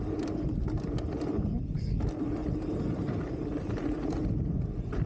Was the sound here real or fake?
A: real